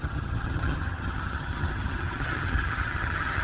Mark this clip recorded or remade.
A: remade